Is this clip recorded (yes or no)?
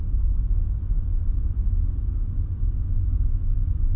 yes